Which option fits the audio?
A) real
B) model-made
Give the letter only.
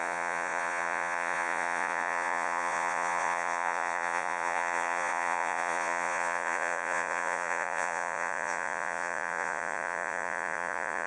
B